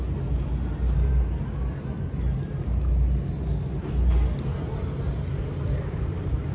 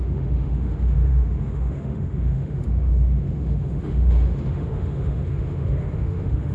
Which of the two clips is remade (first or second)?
second